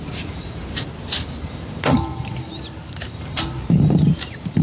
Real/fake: fake